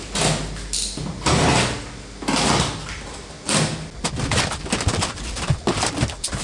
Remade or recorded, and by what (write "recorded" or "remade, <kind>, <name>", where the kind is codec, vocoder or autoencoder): recorded